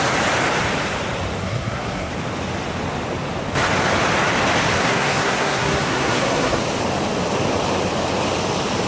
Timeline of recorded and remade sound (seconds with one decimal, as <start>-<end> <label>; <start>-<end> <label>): 0.0-1.4 recorded; 1.4-2.1 remade; 2.1-4.8 recorded; 4.8-6.6 remade; 6.6-8.9 recorded